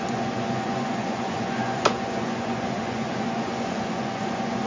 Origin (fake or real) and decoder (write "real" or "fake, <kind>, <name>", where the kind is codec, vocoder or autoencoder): fake, vocoder, Vocos